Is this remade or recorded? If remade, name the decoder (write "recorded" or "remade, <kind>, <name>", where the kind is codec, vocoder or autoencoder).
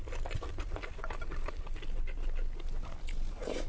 recorded